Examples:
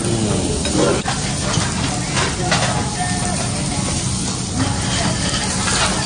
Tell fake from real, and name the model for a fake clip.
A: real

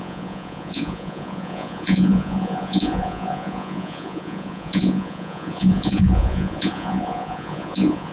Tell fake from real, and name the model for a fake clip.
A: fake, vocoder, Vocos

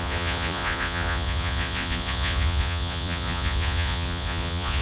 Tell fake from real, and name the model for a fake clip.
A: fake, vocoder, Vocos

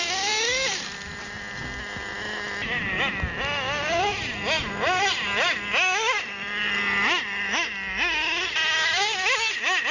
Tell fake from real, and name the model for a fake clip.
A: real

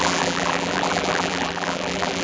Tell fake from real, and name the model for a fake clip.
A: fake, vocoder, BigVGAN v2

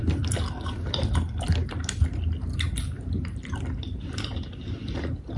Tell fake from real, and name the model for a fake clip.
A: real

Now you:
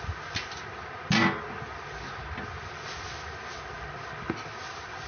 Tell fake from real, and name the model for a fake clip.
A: real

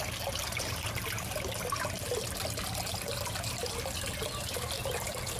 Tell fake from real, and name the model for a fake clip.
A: real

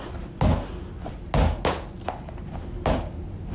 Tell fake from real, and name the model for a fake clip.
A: real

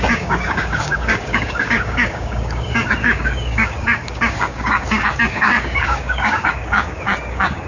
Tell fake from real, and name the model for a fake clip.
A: fake, codec, DAC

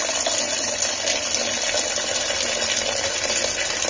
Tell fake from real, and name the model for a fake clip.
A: real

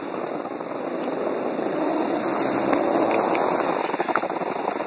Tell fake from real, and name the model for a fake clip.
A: real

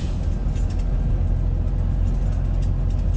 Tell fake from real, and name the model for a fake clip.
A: real